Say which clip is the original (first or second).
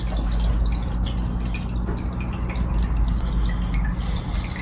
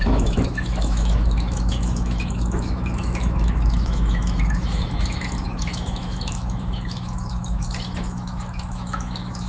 first